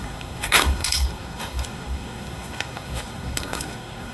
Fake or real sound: fake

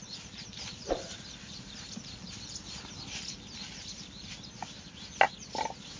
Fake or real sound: real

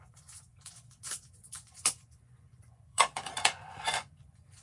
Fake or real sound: fake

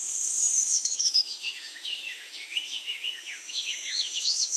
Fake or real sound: fake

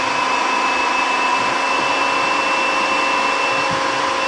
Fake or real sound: real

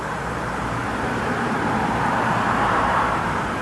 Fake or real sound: fake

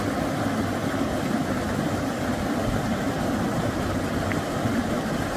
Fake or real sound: real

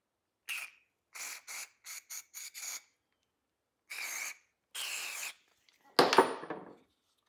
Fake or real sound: real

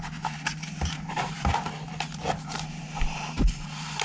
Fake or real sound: fake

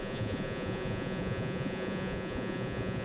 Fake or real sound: fake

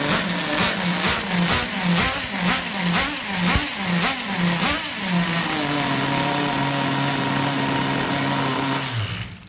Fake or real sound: real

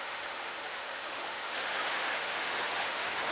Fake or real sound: fake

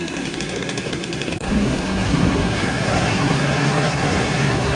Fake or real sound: fake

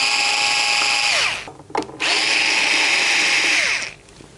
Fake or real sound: real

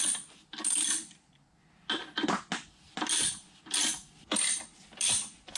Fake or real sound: real